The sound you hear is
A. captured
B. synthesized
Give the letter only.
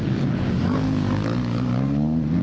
B